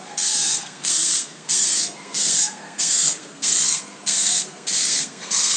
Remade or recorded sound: remade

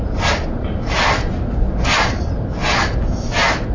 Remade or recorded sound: recorded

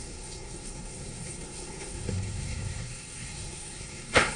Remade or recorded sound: remade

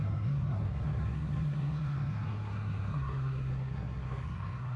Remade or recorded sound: remade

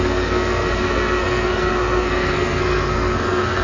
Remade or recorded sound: remade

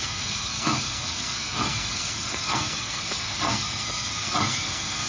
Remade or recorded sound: remade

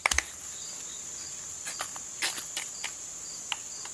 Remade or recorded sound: recorded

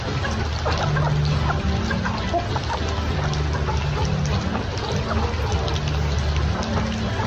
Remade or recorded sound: recorded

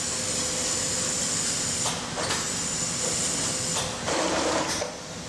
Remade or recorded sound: recorded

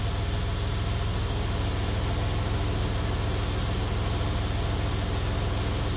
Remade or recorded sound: recorded